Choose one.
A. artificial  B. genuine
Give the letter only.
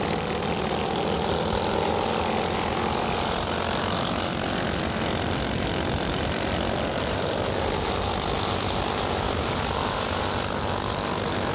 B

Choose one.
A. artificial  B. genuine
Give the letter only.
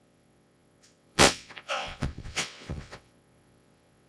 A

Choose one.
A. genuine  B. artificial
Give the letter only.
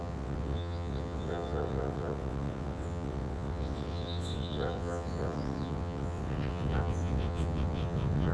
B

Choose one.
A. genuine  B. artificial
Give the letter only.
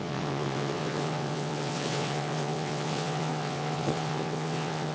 B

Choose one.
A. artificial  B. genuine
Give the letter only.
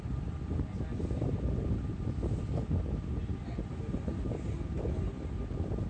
B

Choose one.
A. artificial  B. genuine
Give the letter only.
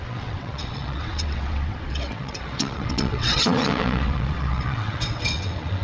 A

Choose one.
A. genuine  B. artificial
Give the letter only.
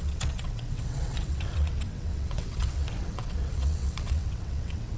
B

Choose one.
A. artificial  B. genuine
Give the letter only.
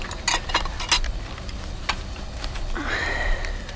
B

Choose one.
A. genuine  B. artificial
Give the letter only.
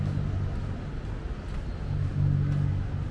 A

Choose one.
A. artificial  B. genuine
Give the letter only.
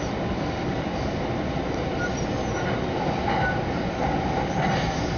B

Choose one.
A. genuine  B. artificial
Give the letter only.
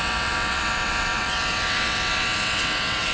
B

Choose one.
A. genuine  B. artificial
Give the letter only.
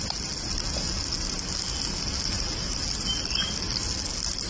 A